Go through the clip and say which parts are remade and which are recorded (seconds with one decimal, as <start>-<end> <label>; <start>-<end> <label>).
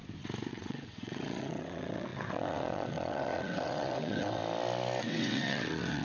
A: 0.0-0.5 recorded; 0.5-4.4 remade; 4.4-5.0 recorded; 5.0-6.0 remade